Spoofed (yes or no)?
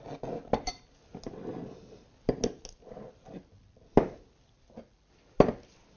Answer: no